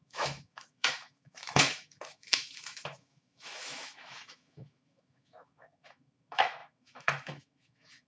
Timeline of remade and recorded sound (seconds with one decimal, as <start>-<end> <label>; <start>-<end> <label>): 0.0-8.1 remade